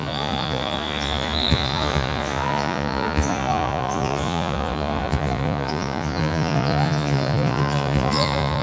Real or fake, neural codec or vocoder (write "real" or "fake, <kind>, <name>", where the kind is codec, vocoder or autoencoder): fake, vocoder, Vocos